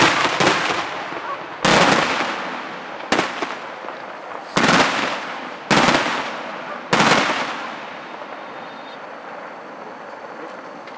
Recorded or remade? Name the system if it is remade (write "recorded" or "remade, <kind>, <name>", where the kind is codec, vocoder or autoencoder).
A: recorded